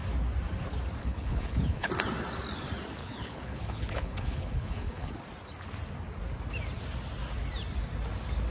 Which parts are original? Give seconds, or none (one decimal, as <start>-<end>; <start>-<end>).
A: 0.0-1.0; 1.9-3.0; 5.1-8.5